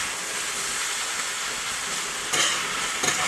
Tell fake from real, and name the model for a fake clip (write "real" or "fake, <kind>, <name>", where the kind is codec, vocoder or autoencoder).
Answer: real